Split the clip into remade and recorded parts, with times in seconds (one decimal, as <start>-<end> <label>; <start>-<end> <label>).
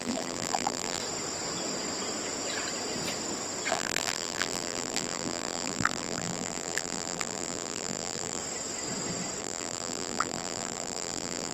0.0-1.0 remade; 1.0-3.7 recorded; 3.7-8.4 remade; 8.4-9.4 recorded; 9.4-11.5 remade